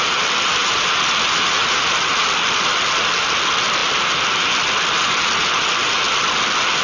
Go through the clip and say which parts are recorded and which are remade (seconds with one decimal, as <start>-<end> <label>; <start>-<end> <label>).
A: 0.0-6.8 recorded